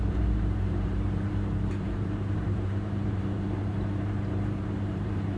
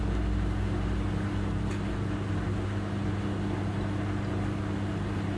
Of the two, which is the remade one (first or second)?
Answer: first